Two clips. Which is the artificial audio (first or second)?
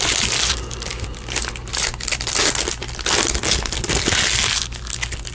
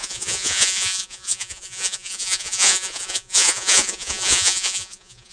second